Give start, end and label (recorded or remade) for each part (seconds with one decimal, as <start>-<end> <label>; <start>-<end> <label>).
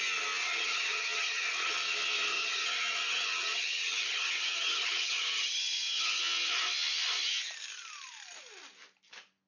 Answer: 0.0-0.4 recorded; 0.4-1.7 remade; 1.7-2.3 recorded; 2.3-6.2 remade; 6.2-9.5 recorded